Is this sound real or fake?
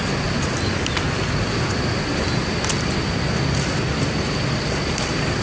real